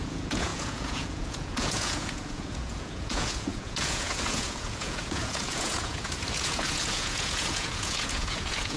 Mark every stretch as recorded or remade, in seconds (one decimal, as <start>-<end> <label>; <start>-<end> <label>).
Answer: 0.0-8.8 remade